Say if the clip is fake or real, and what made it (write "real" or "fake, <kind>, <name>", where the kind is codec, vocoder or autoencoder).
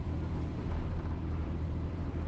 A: fake, vocoder, BigVGAN v2